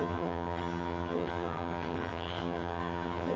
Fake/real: fake